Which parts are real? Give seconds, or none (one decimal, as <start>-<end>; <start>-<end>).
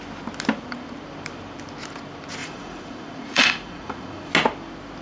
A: 0.0-2.4; 4.3-5.0